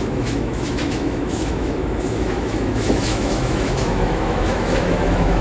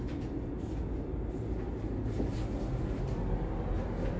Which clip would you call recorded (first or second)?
second